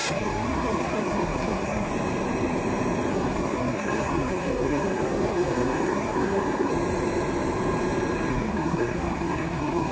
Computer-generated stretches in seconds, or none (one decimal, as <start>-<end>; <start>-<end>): 0.0-1.9; 3.1-6.7; 8.3-9.9